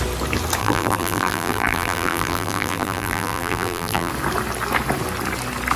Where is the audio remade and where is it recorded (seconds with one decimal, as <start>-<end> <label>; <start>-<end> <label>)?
0.0-0.6 recorded; 0.6-4.1 remade; 4.1-5.8 recorded